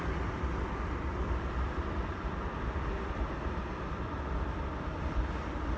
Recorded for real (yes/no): no